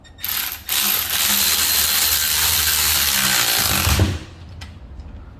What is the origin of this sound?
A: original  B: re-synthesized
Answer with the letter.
A